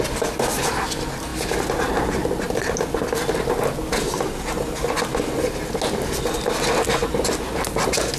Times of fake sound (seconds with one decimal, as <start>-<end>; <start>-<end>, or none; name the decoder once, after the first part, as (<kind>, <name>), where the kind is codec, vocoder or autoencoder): none